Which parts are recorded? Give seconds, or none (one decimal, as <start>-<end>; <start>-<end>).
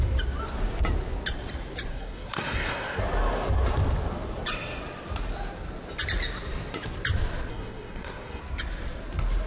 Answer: 0.0-1.9; 3.0-7.5; 8.4-9.5